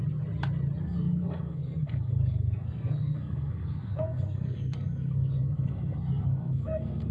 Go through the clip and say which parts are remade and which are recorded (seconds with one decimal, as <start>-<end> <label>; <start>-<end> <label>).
0.0-0.8 recorded; 0.8-7.1 remade